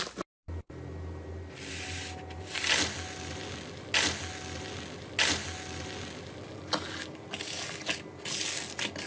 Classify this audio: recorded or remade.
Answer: recorded